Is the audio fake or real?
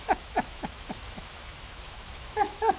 fake